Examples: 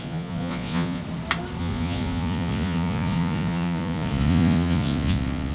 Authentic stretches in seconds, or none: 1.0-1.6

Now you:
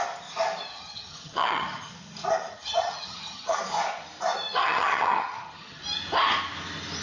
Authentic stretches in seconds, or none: 0.0-0.7; 1.9-2.5; 3.6-4.6; 5.8-7.0

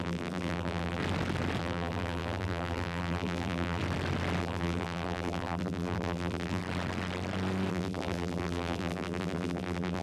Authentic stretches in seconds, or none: 1.0-1.6; 3.8-4.4; 6.6-7.7

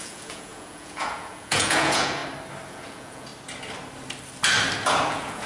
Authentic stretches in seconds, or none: 2.2-2.7; 3.3-5.1

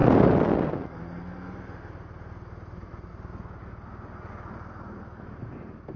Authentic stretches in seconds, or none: 0.0-6.0